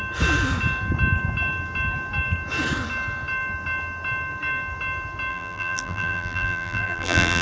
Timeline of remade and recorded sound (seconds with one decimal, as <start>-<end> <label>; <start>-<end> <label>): 0.0-5.3 recorded; 5.3-7.4 remade